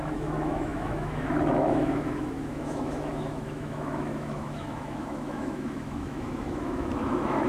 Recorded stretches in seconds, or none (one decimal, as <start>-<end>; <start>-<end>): none